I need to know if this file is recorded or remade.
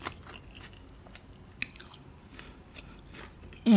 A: recorded